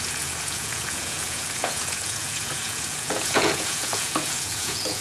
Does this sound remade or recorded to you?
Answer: remade